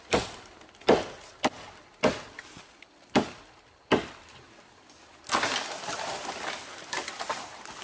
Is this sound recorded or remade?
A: recorded